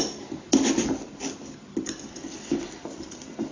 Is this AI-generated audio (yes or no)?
no